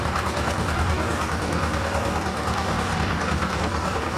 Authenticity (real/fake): fake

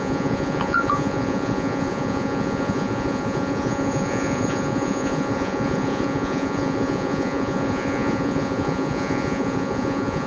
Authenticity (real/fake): fake